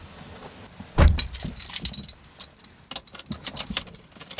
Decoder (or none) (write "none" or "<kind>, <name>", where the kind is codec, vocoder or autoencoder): none